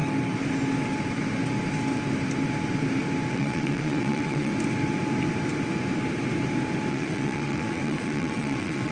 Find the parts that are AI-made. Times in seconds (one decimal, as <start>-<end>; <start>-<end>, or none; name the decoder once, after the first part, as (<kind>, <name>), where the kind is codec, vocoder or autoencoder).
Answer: 3.3-4.5 (vocoder, WaveNeXt); 6.9-8.9